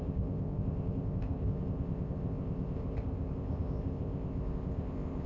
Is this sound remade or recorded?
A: remade